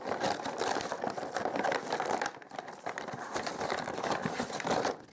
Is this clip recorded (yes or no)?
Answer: no